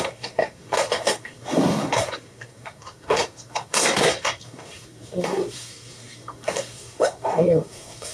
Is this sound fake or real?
fake